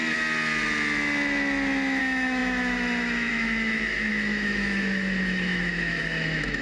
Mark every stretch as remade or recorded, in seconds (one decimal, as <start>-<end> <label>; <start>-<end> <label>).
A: 0.0-2.0 recorded; 2.0-6.6 remade